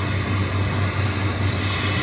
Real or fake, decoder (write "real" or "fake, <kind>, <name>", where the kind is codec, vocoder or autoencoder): real